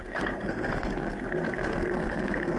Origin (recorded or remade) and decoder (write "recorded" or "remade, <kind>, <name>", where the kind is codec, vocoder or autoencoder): remade, codec, SNAC